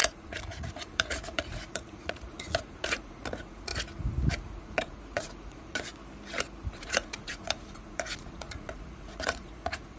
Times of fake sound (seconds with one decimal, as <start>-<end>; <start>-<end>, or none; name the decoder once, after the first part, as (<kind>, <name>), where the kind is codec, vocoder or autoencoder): 0.0-3.7 (vocoder, Vocos); 4.4-5.9; 6.7-10.0